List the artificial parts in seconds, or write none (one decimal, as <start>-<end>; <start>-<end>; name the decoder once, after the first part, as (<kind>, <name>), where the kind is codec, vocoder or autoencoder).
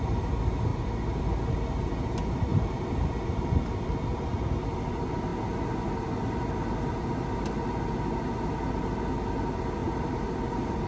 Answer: 0.7-1.2 (vocoder, BigVGAN v2); 2.5-3.1; 9.8-10.9